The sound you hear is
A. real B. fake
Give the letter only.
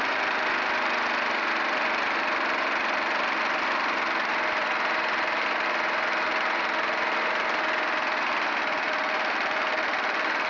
A